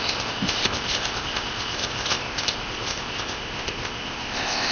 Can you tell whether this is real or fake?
fake